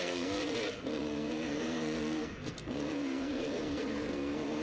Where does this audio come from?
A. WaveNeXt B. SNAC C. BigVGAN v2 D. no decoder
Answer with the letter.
B